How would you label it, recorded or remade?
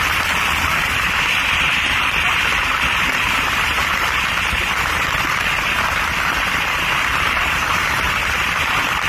recorded